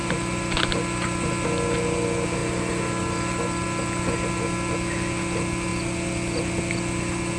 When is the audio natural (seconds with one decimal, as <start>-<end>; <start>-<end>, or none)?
1.3-2.4; 3.8-7.4